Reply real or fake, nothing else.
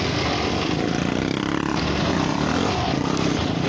real